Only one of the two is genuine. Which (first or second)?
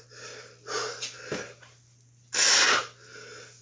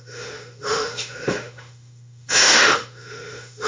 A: first